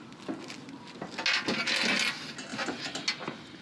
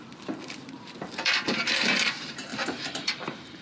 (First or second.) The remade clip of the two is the second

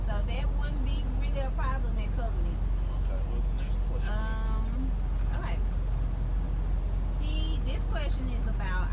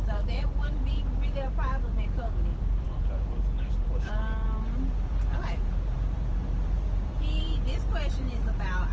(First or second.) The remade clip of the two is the second